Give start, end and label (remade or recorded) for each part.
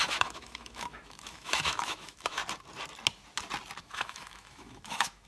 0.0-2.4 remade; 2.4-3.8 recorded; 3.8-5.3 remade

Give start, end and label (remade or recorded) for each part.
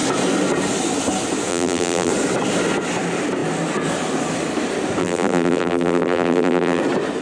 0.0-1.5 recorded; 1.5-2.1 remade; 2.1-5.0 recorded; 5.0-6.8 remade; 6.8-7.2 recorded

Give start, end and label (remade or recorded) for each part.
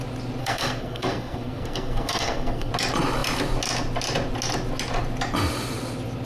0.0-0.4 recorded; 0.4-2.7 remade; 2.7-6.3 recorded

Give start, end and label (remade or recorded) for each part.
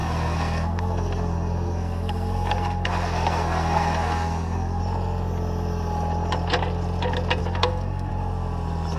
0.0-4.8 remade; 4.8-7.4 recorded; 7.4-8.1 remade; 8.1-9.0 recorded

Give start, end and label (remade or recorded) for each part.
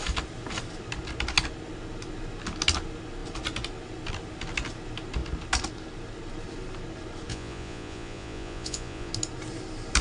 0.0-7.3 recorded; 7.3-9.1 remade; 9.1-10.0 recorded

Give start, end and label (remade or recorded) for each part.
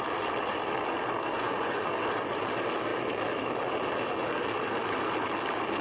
0.0-1.3 recorded; 1.3-1.9 remade; 1.9-5.8 recorded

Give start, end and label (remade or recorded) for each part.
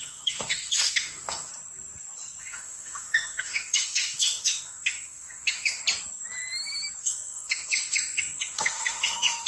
0.0-1.5 remade; 1.5-2.4 recorded; 2.4-5.8 remade; 5.8-7.0 recorded; 7.0-9.5 remade